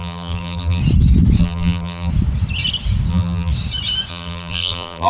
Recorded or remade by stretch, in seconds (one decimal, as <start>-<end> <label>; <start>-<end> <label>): 0.0-0.8 remade; 0.8-1.4 recorded; 1.4-2.1 remade; 2.1-3.1 recorded; 3.1-3.5 remade; 3.5-4.1 recorded; 4.1-5.1 remade